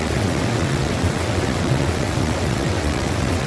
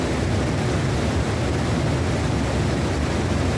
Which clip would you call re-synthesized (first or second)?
first